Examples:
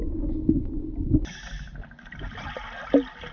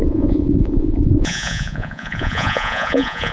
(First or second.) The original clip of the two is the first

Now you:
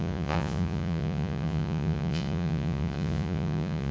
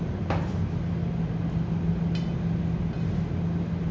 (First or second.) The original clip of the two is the second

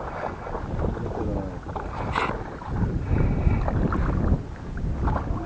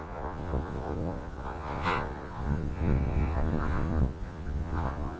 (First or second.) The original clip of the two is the first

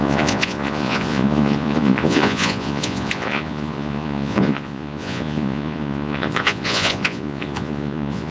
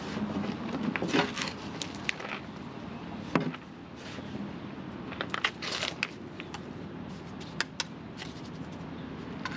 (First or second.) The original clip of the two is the second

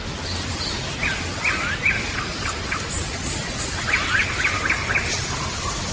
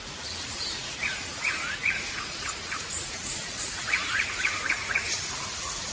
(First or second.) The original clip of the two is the first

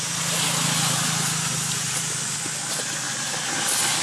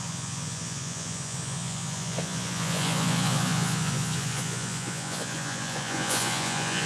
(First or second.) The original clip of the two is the first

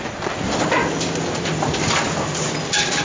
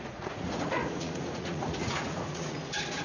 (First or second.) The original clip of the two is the first